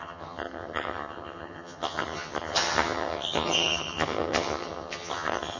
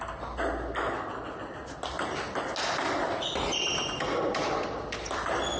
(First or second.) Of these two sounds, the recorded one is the second